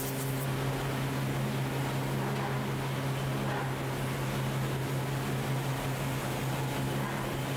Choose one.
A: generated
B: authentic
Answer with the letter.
B